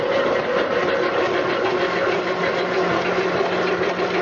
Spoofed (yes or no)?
no